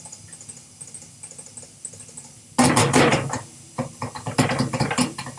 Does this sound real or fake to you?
real